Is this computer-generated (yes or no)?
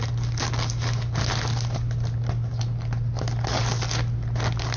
no